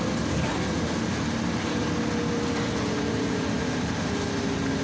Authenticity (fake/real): real